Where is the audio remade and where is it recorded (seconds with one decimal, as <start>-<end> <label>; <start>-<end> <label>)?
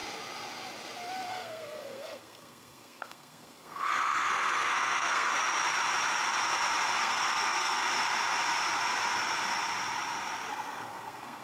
0.0-1.3 recorded; 1.3-5.3 remade; 5.3-7.0 recorded; 7.0-7.8 remade; 7.8-10.5 recorded; 10.5-11.4 remade